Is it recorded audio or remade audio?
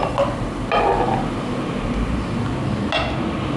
recorded